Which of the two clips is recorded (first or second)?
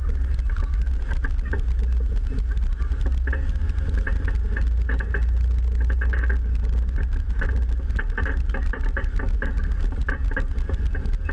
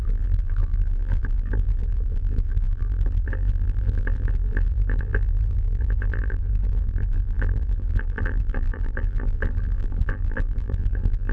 first